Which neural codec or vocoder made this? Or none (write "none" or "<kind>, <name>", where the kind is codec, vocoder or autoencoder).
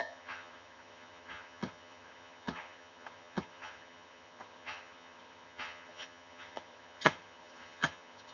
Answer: vocoder, HiFi-GAN